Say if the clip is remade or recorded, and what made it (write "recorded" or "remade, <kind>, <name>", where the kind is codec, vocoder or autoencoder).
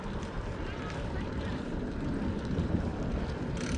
remade, vocoder, BigVGAN v2